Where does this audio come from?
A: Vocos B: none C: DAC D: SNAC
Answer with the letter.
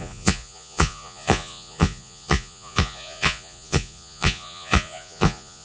A